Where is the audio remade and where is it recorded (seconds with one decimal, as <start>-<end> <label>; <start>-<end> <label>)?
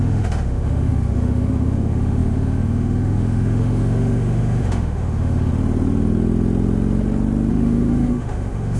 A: 0.0-5.5 remade; 5.5-7.5 recorded; 7.5-8.8 remade